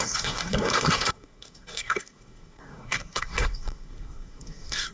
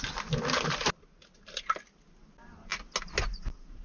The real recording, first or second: second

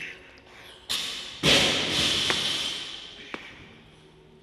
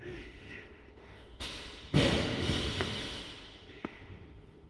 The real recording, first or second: first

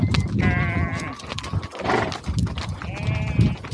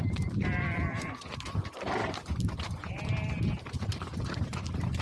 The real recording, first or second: first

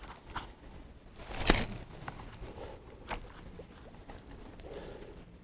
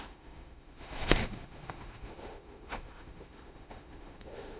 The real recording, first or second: first